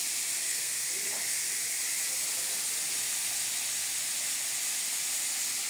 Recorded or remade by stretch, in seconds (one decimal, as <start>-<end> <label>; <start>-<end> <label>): 0.0-0.4 recorded; 0.4-0.9 remade; 0.9-5.7 recorded